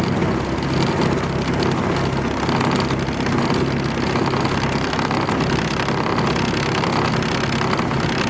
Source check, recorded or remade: recorded